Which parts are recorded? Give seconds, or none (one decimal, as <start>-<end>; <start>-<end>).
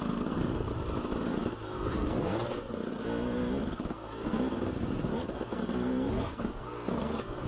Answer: 0.7-1.3